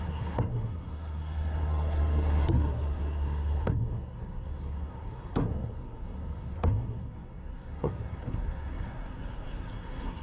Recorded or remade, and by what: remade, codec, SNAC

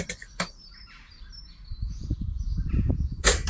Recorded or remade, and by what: remade, vocoder, BigVGAN v2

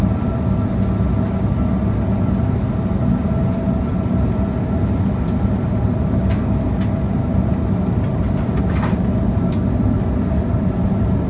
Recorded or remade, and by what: recorded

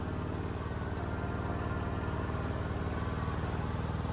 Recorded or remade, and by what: recorded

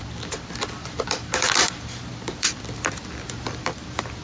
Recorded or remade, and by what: remade, vocoder, BigVGAN v2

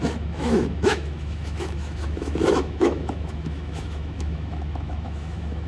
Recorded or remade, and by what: remade, autoencoder, DAC-VAE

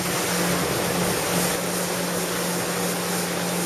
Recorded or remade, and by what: recorded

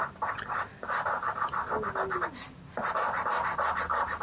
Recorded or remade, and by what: recorded